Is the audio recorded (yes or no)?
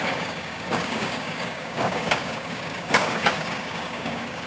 no